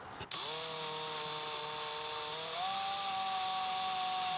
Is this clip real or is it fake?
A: real